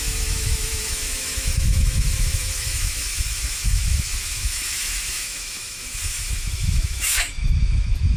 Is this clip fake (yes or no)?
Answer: yes